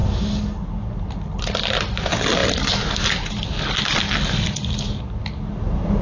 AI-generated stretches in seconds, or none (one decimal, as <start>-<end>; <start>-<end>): none